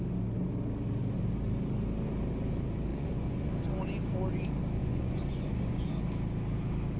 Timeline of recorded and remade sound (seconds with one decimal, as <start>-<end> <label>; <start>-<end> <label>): 0.0-2.9 recorded; 2.9-3.5 remade; 3.5-4.8 recorded; 4.8-5.9 remade; 5.9-7.0 recorded